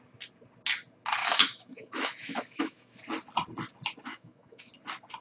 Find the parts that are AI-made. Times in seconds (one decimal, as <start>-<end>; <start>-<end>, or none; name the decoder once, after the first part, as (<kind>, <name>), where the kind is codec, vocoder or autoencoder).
1.2-3.0 (autoencoder, DAC-VAE); 4.1-4.7